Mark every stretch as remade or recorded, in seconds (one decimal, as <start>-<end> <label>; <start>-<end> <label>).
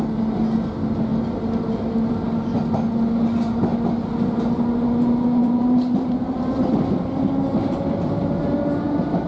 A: 0.0-5.4 recorded; 5.4-6.7 remade; 6.7-9.3 recorded